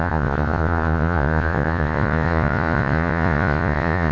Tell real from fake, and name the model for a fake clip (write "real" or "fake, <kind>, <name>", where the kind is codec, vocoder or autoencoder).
fake, vocoder, Vocos